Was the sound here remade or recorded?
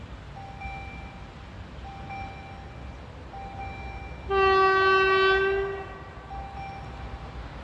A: recorded